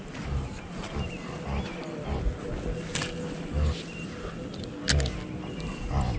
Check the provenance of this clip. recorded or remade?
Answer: recorded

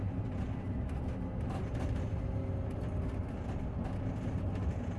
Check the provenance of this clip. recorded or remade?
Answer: recorded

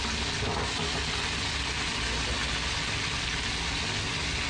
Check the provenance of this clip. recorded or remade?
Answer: recorded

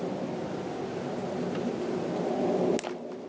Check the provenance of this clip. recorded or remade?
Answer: recorded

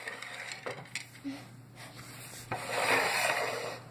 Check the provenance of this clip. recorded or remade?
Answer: recorded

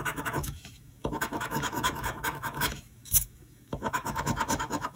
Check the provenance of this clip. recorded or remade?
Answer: remade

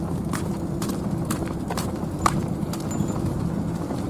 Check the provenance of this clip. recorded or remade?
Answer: recorded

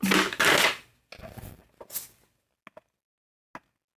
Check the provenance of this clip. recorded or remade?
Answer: recorded